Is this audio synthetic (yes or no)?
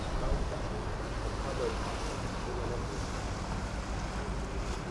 no